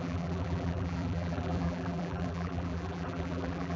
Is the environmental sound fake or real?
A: fake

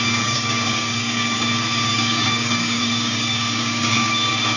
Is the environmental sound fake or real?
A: fake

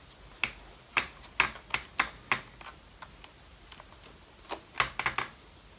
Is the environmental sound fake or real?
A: real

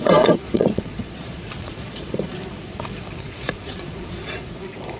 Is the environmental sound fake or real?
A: fake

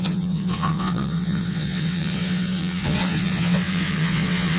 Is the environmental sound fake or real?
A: fake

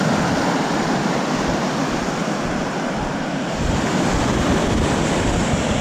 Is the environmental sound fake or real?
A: real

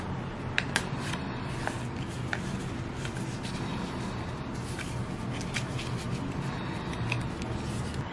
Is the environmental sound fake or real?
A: real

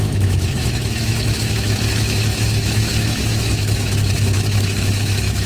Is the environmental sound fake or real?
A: fake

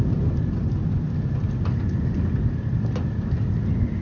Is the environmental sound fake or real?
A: real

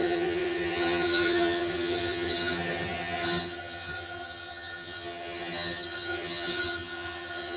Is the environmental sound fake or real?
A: fake